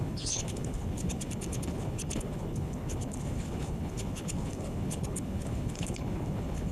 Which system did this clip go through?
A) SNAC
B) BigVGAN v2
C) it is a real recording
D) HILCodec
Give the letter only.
D